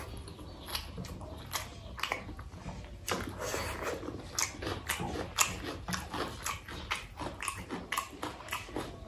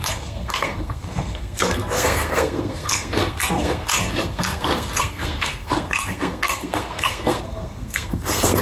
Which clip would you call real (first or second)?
first